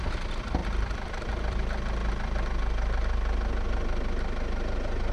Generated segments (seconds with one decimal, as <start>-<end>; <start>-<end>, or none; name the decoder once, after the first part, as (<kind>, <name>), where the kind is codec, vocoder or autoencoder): 0.6-1.6 (vocoder, BigVGAN v2); 2.0-2.5